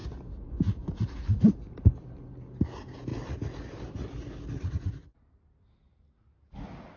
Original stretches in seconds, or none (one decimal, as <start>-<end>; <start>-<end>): 0.0-7.0